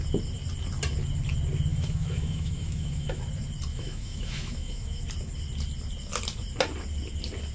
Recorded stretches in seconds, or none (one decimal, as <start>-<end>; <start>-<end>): 0.0-1.7; 3.2-3.7; 5.0-7.5